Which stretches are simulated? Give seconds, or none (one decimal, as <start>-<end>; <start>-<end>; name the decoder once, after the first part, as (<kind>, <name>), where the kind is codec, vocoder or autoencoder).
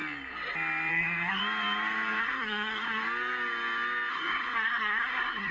0.9-1.4 (codec, SNAC); 2.2-3.0; 4.1-5.5